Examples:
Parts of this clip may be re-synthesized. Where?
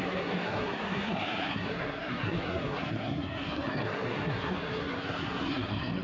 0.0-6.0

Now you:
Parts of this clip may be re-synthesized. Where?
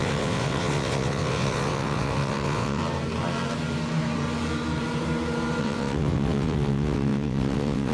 0.0-2.8; 5.6-7.9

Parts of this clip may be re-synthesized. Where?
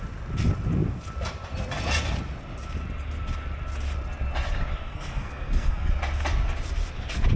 4.8-5.9